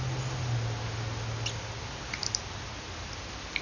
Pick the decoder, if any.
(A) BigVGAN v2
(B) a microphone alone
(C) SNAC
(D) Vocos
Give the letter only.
B